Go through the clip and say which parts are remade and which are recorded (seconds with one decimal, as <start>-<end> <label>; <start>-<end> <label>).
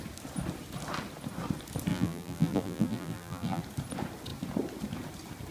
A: 0.0-1.9 recorded; 1.9-3.6 remade; 3.6-5.5 recorded